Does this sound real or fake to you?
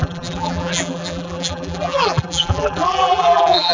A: fake